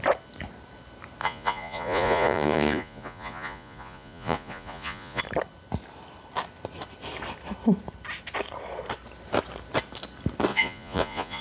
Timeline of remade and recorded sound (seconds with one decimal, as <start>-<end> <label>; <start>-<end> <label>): 0.0-1.2 recorded; 1.2-5.2 remade; 5.2-10.5 recorded; 10.5-11.4 remade